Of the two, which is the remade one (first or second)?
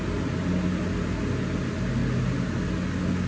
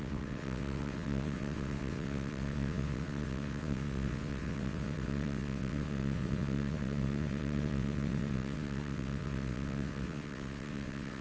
second